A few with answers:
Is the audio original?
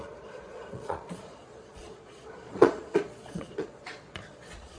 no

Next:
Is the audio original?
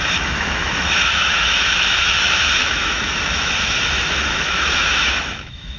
no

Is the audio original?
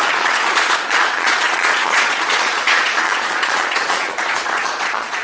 no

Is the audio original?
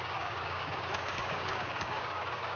no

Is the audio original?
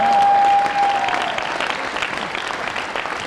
yes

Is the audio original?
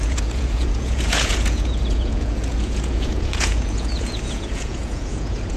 no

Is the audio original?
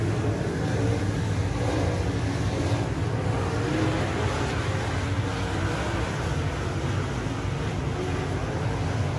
yes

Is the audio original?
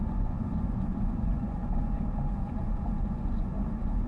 no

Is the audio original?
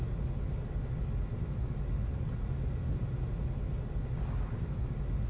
yes